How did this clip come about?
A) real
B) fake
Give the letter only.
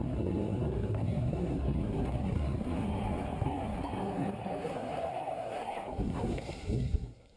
B